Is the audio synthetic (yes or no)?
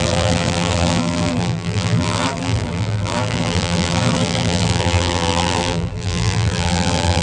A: yes